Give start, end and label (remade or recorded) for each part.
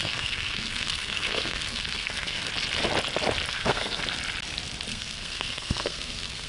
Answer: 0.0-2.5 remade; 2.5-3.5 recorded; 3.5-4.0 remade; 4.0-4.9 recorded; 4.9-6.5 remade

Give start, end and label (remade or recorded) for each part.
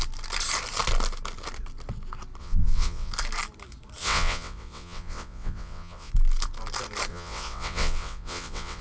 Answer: 0.0-2.4 recorded; 2.4-3.1 remade; 3.1-4.0 recorded; 4.0-6.1 remade; 6.1-7.1 recorded; 7.1-8.8 remade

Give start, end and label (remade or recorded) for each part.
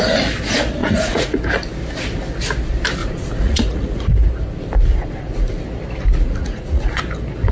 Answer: 0.0-0.8 recorded; 0.8-1.4 remade; 1.4-3.0 recorded; 3.0-4.1 remade; 4.1-6.4 recorded; 6.4-7.0 remade; 7.0-7.5 recorded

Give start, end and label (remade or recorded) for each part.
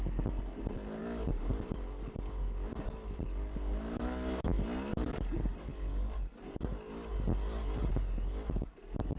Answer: 0.0-9.2 recorded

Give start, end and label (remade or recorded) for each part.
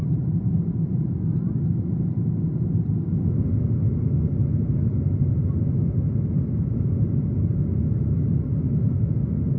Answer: 0.0-1.9 remade; 1.9-9.6 recorded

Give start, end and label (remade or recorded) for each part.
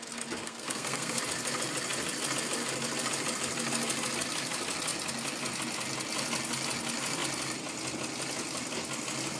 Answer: 0.0-0.4 recorded; 0.4-1.2 remade; 1.2-9.4 recorded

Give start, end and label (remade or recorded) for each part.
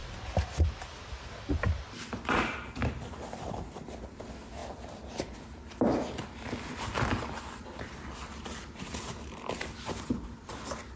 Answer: 0.0-11.0 recorded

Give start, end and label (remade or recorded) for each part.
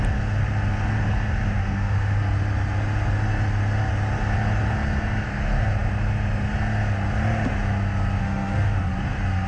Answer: 0.0-1.6 recorded; 1.6-2.2 remade; 2.2-8.2 recorded; 8.2-8.9 remade; 8.9-9.5 recorded